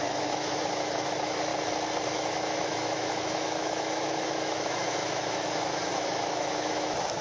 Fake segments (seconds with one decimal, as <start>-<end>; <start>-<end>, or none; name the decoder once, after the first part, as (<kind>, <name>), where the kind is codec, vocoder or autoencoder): 0.0-1.5 (autoencoder, DAC-VAE); 2.1-7.2